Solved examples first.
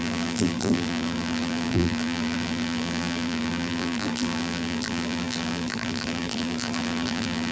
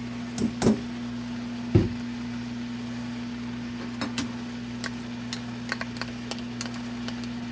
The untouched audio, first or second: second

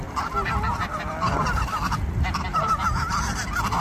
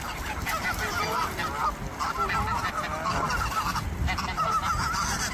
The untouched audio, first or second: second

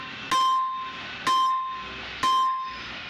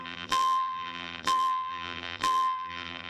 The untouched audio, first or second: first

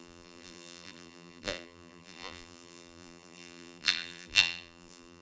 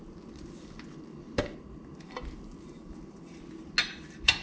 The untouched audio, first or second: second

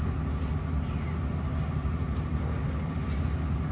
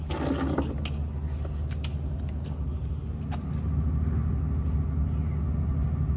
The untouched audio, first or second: second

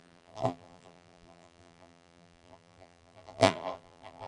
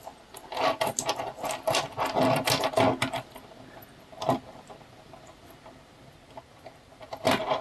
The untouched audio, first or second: second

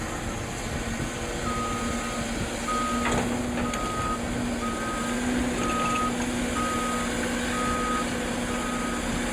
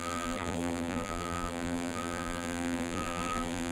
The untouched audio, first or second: first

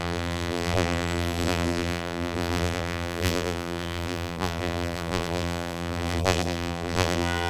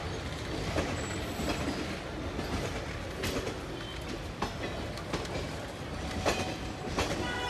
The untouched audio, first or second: second